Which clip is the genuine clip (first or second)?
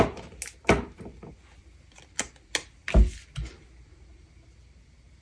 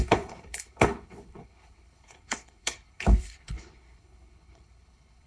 first